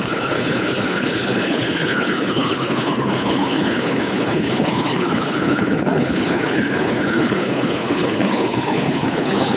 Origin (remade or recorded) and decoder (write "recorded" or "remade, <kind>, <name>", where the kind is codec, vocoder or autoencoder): remade, codec, HILCodec